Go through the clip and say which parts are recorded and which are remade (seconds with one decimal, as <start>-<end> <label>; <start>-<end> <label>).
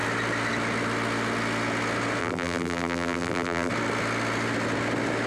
0.0-2.2 recorded; 2.2-3.7 remade; 3.7-5.3 recorded